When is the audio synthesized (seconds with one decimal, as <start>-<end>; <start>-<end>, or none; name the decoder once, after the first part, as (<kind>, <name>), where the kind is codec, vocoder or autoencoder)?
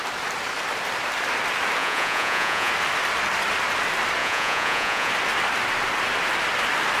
1.8-2.7 (vocoder, Vocos); 4.2-5.1